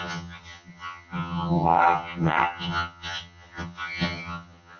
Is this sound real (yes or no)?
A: no